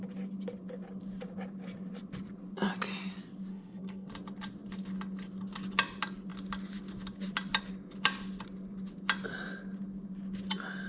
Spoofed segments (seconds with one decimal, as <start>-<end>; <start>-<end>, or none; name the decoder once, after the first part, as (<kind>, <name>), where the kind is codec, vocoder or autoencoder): 3.5-4.1 (codec, SNAC)